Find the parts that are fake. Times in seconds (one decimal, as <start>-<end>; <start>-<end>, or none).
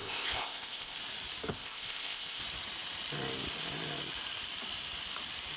0.0-1.0; 1.5-2.4